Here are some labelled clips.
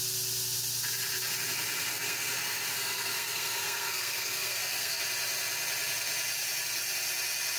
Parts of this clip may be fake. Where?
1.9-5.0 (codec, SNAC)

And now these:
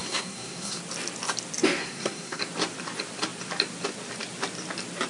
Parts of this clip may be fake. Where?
0.0-0.8 (codec, SNAC); 1.8-2.4

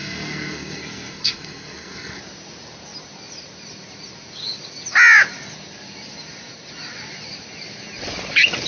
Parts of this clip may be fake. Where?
0.0-2.2 (codec, SNAC)

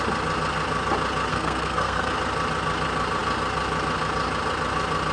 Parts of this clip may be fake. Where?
1.3-2.1 (codec, SNAC)

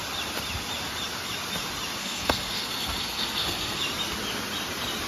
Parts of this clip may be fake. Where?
2.0-3.8 (codec, SNAC)

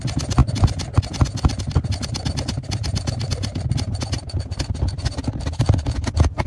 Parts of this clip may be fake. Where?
none